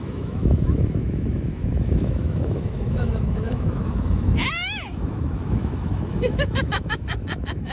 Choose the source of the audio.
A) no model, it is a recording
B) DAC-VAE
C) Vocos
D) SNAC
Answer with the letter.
B